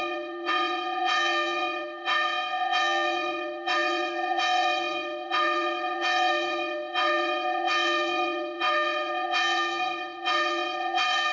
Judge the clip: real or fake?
fake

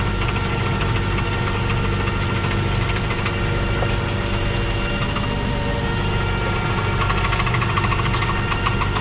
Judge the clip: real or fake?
real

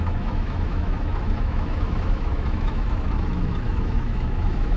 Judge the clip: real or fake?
fake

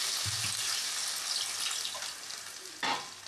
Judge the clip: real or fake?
real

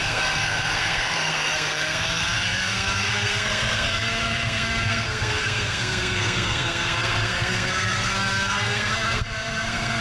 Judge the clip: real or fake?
fake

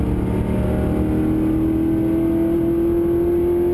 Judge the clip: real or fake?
real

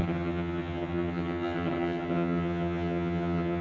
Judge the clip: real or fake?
fake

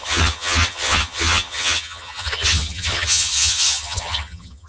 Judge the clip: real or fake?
fake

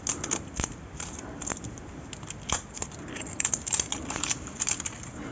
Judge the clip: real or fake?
real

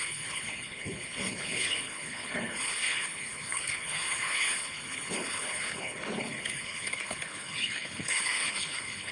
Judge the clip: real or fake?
fake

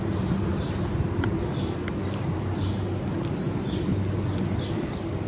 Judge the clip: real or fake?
real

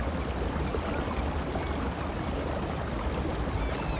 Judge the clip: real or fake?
real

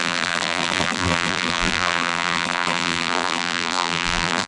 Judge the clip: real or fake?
fake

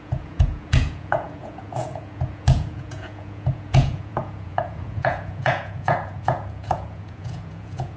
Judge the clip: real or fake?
fake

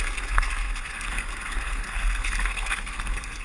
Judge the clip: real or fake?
fake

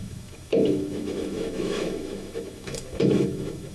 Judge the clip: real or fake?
fake